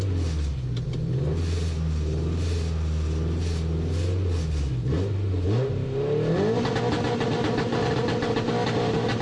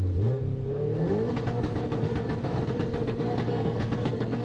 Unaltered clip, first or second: first